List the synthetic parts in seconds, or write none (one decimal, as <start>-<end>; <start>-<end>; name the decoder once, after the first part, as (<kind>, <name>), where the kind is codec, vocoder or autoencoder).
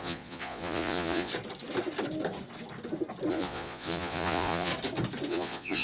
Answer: 0.0-1.3 (vocoder, Vocos); 3.3-4.7; 5.3-5.8